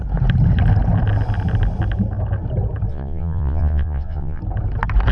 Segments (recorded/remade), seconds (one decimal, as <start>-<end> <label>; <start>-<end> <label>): 0.0-2.9 recorded; 2.9-4.4 remade; 4.4-5.1 recorded